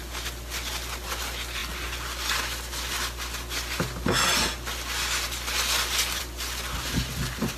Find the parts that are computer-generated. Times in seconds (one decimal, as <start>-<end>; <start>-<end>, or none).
none